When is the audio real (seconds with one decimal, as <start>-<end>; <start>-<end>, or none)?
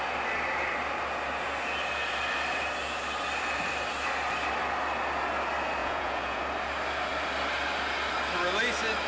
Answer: 0.0-5.8; 6.4-9.1